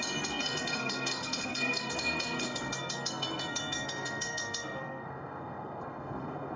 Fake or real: fake